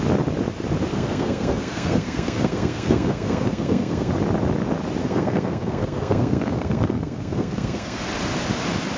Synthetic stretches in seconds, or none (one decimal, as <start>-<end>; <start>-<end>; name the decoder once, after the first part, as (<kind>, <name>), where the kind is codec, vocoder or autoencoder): 0.9-4.1 (codec, SNAC); 5.0-8.0